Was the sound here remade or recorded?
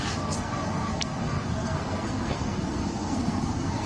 remade